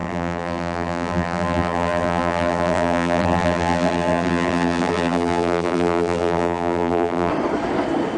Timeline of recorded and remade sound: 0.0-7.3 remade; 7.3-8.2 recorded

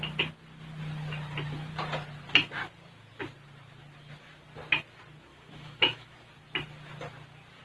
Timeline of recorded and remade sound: 0.0-5.3 recorded; 5.3-6.3 remade; 6.3-7.6 recorded

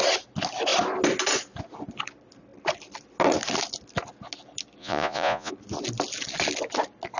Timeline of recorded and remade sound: 0.0-4.8 recorded; 4.8-5.5 remade; 5.5-7.2 recorded

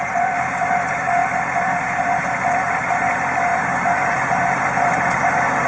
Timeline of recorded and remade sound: 0.0-5.7 remade

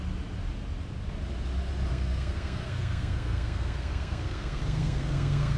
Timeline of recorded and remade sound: 0.0-1.9 recorded; 1.9-5.6 remade

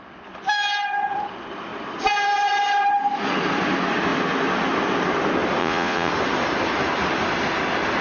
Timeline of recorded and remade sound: 0.0-5.6 recorded; 5.6-6.1 remade; 6.1-8.0 recorded

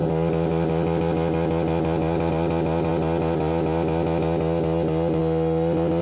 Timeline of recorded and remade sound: 0.0-6.0 recorded